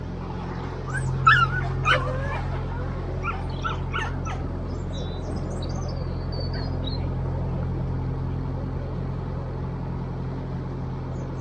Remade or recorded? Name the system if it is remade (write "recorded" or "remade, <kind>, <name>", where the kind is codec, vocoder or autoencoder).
recorded